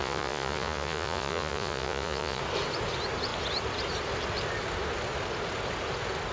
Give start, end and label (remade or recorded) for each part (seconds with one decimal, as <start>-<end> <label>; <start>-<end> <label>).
0.0-2.4 remade; 2.4-6.3 recorded